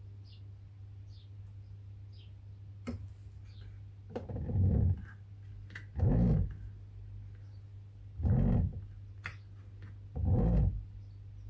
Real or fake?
real